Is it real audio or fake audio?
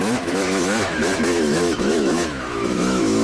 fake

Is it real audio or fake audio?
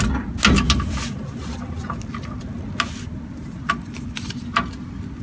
real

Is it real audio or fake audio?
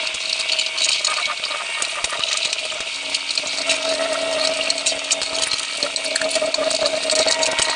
real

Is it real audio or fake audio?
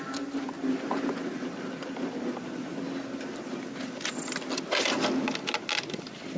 real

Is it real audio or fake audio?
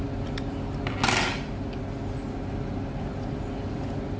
real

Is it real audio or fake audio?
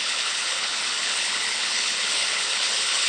fake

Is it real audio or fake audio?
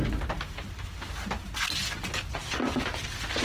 real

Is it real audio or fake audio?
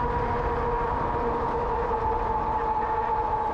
real